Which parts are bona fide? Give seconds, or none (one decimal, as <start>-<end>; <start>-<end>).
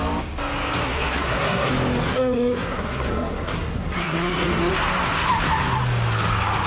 0.0-0.8; 1.7-2.1; 4.7-6.7